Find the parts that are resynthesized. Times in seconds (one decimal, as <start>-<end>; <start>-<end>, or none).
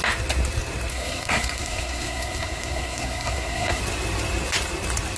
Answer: 0.9-3.8